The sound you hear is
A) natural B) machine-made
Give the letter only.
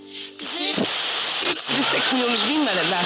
A